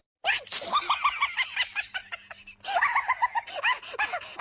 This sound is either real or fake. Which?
real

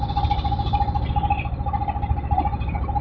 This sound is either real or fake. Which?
real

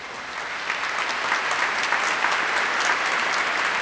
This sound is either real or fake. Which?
real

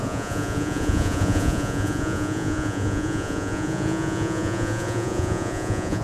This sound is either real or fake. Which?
fake